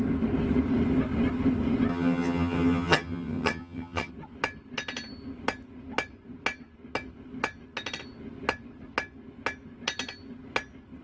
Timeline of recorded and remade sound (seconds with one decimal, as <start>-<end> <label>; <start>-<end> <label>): 0.0-1.9 recorded; 1.9-4.1 remade; 4.1-11.0 recorded